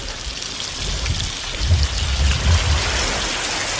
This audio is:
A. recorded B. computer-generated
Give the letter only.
A